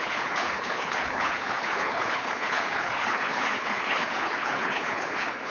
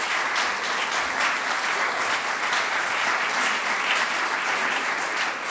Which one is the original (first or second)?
second